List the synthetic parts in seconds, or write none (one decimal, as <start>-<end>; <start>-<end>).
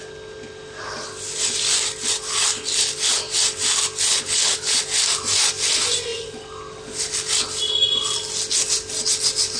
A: 4.1-4.8